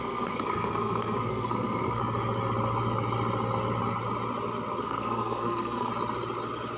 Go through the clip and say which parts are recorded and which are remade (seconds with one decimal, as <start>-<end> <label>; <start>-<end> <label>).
0.0-2.0 remade; 2.0-4.8 recorded; 4.8-5.9 remade; 5.9-6.8 recorded